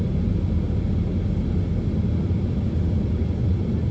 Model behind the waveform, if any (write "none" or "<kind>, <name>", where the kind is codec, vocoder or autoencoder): none